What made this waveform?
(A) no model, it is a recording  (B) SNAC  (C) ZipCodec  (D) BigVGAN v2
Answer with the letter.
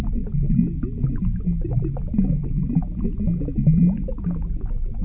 A